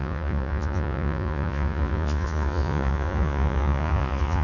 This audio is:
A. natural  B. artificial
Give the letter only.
B